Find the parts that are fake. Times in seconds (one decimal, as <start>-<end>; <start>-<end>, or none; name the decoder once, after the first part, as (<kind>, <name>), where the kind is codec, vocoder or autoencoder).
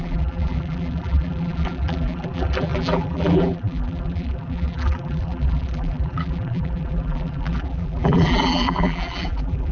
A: 0.0-9.7 (vocoder, BigVGAN v2)